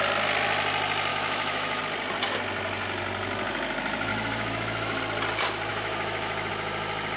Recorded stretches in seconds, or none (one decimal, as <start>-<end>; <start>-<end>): 0.0-1.1; 1.8-4.1; 5.0-5.7; 6.5-7.2